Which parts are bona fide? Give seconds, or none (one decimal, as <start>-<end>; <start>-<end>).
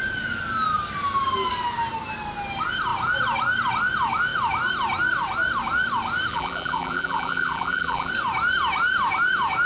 0.0-6.3; 8.1-9.7